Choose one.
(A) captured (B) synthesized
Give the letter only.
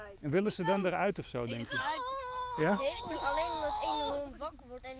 B